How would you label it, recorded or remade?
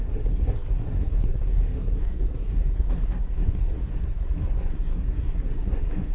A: remade